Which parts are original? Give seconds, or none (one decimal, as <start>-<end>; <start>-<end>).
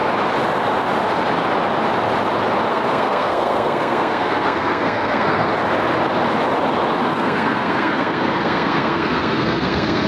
0.0-2.7; 5.5-7.1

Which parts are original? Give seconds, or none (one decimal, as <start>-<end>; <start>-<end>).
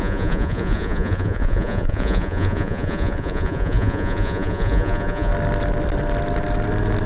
5.3-7.1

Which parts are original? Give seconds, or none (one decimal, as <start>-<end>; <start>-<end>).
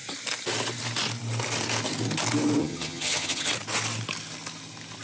0.0-2.6; 3.5-5.0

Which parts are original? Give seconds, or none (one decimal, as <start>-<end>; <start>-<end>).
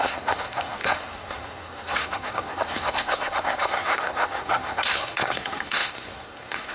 none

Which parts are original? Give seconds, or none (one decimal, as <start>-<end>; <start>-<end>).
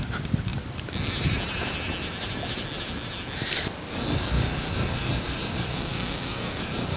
0.0-5.7; 6.6-7.0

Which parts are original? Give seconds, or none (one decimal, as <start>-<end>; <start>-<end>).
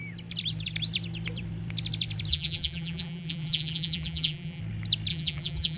0.0-2.3; 4.6-5.1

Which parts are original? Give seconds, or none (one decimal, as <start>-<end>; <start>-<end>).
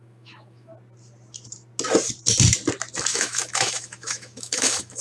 0.7-3.0